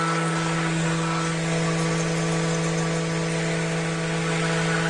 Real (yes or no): yes